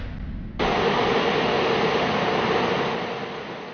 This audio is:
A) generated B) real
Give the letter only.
B